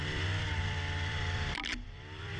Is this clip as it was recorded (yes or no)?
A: no